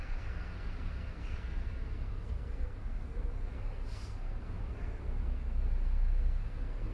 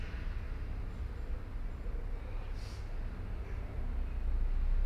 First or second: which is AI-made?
first